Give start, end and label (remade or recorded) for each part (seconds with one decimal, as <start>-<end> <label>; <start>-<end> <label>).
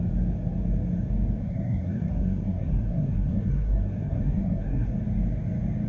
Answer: 0.0-1.4 recorded; 1.4-4.9 remade; 4.9-5.9 recorded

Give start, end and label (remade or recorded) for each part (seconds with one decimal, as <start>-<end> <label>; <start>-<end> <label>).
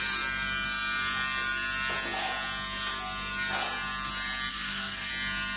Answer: 0.0-4.5 recorded; 4.5-5.1 remade; 5.1-5.6 recorded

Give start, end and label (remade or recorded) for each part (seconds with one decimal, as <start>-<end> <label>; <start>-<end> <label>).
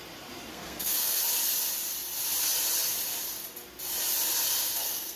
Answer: 0.0-0.5 recorded; 0.5-1.2 remade; 1.2-4.6 recorded; 4.6-5.2 remade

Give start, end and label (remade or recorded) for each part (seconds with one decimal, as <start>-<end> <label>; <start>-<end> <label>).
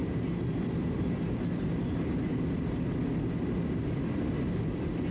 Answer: 0.0-5.1 recorded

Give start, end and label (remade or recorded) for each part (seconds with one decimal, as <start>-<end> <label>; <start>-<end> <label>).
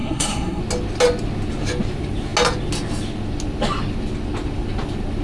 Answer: 0.0-0.6 remade; 0.6-5.2 recorded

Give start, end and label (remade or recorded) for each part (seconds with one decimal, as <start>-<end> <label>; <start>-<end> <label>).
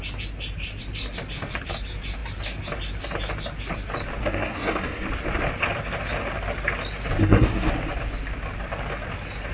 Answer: 0.0-4.2 recorded; 4.2-5.1 remade; 5.1-7.2 recorded; 7.2-7.7 remade; 7.7-9.5 recorded